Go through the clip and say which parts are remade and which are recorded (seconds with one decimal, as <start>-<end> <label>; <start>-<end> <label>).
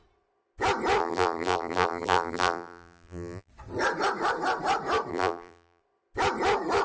0.0-1.0 recorded; 1.0-3.5 remade; 3.5-5.1 recorded; 5.1-5.8 remade; 5.8-6.8 recorded